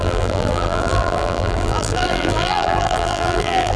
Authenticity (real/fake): fake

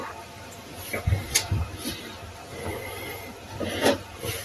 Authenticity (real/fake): fake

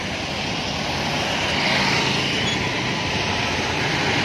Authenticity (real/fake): real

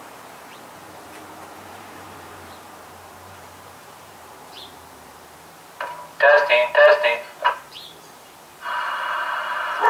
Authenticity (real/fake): fake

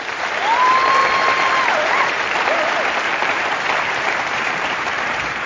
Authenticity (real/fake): fake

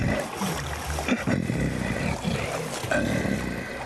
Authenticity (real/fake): real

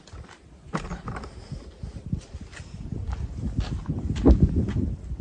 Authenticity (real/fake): real